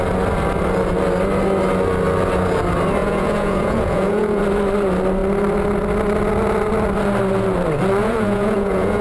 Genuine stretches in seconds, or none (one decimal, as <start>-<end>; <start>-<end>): 0.0-3.0; 4.4-8.0